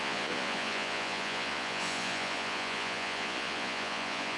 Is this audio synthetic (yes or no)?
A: yes